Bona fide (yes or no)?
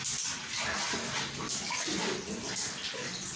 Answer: yes